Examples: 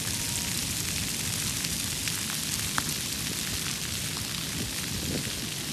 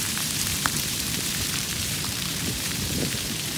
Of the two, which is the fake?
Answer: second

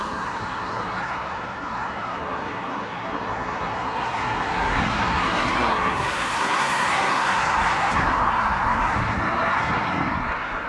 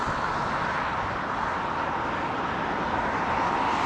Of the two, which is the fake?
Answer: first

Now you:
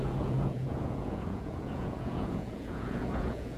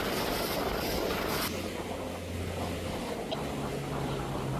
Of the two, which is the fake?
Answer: first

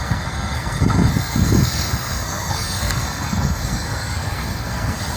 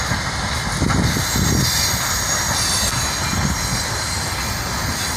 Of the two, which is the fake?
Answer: first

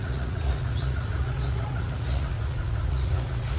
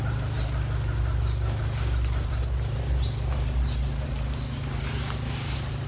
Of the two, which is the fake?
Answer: first